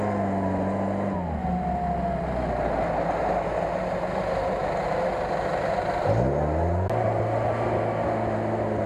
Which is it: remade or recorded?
recorded